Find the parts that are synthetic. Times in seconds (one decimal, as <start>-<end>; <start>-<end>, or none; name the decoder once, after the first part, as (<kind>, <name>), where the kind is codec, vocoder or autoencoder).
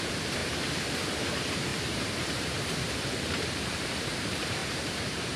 0.0-0.4 (vocoder, BigVGAN v2); 1.1-5.4